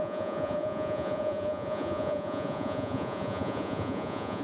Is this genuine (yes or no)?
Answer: no